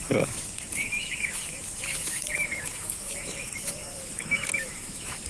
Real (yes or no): no